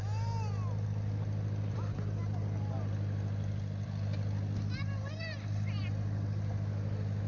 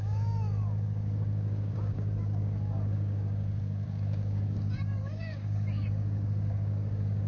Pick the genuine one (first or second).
first